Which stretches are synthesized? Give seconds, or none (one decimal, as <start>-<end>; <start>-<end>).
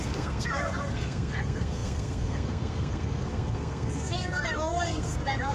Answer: 0.0-5.5